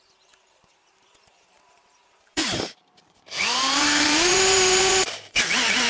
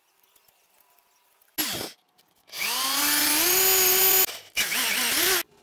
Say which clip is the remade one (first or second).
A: first